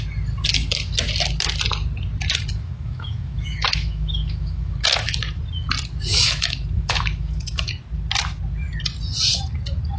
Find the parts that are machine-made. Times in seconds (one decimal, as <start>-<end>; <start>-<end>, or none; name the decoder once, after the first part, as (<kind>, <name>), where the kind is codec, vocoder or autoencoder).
2.5-5.4 (autoencoder, DAC-VAE); 6.1-7.7